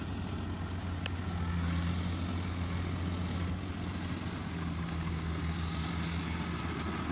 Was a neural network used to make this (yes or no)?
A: no